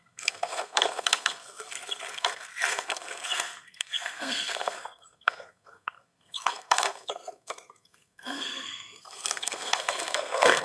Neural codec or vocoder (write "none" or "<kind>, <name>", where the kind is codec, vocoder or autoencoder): codec, SNAC